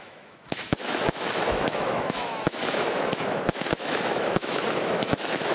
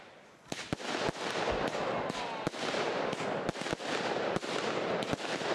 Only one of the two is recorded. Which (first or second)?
second